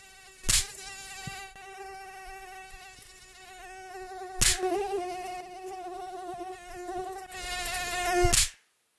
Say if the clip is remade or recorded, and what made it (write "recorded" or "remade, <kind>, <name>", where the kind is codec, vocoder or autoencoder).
recorded